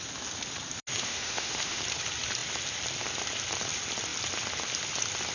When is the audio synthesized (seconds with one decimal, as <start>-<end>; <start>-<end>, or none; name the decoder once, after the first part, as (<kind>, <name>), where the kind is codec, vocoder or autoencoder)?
0.9-1.8 (autoencoder, DAC-VAE)